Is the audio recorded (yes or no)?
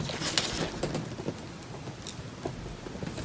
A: yes